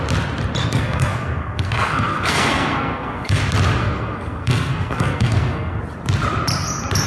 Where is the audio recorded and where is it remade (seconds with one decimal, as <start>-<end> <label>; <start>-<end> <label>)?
0.0-0.6 recorded; 0.6-3.4 remade; 3.4-3.8 recorded; 3.8-5.8 remade; 5.8-7.1 recorded